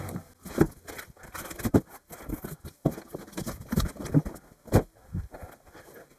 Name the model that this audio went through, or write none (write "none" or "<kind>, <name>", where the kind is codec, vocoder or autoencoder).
none